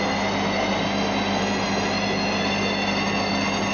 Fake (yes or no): no